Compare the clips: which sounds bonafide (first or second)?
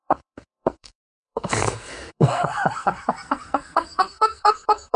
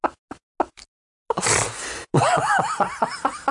second